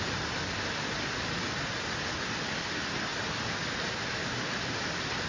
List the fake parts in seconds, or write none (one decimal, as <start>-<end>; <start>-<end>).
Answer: none